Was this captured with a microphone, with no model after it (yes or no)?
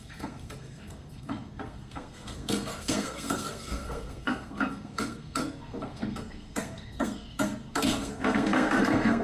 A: no